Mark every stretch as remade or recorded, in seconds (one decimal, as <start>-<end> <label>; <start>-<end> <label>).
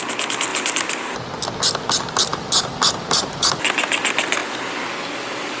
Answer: 0.0-4.4 recorded; 4.4-4.9 remade; 4.9-5.6 recorded